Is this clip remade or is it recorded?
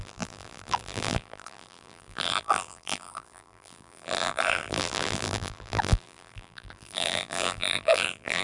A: remade